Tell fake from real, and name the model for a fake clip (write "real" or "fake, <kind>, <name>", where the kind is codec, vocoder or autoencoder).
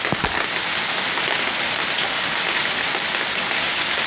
real